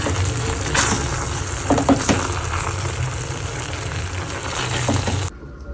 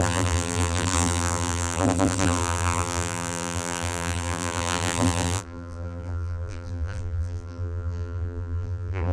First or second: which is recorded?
first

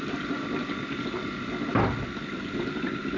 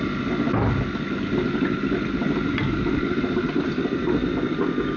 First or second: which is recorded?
second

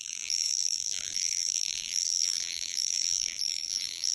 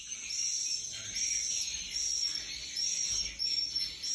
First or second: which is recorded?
second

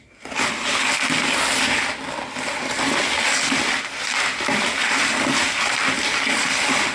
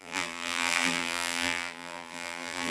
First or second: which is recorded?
first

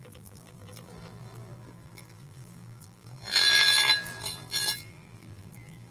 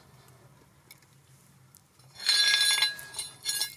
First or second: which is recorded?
second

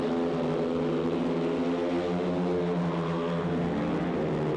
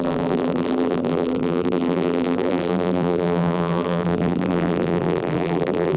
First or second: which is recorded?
first